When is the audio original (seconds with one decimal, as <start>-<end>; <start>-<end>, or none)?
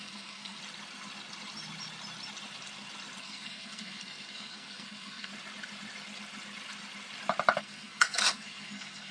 0.6-3.2; 5.3-7.6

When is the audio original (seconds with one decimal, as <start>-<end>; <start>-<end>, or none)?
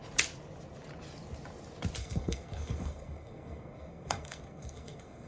0.0-2.0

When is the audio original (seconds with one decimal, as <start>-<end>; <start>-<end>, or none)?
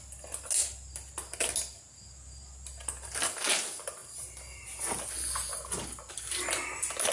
0.0-7.1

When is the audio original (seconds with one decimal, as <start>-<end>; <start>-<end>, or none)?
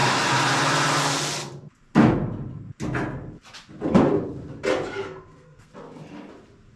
0.0-5.0; 5.7-6.8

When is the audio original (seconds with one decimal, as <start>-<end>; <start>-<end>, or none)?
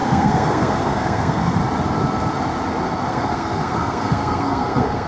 1.6-3.1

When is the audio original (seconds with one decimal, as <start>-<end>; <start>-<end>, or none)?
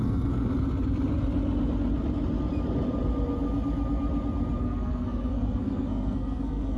0.5-4.6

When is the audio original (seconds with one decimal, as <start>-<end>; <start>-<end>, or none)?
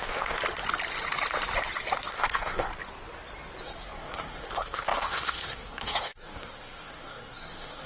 0.4-2.1; 2.7-3.6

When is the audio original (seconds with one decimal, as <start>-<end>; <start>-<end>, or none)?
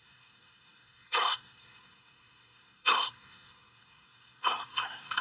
none